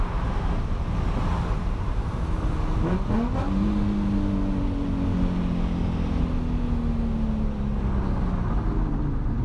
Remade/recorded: recorded